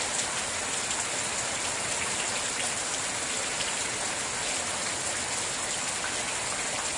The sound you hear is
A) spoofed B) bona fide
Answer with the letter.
B